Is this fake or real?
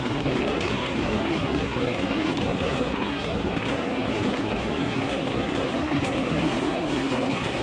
fake